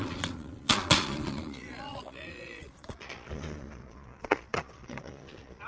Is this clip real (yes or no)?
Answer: no